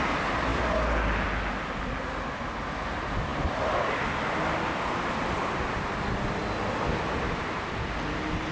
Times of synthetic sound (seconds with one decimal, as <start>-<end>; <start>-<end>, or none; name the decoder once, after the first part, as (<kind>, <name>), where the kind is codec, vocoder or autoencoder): none